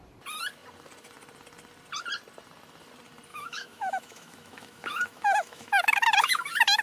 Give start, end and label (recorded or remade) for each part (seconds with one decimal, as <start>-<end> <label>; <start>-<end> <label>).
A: 0.0-3.3 recorded; 3.3-6.8 remade